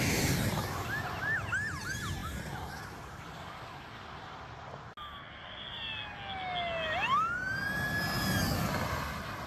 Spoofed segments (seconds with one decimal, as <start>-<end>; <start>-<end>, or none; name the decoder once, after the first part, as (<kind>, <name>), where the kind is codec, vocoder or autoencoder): none